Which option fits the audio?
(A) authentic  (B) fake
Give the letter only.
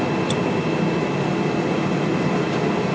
A